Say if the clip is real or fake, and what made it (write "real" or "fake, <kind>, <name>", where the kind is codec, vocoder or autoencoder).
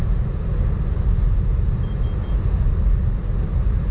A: real